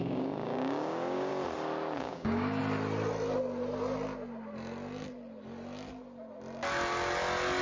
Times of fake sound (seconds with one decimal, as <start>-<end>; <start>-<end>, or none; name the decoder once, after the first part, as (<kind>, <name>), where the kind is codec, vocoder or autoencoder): 0.0-1.3 (codec, DAC); 2.0-2.6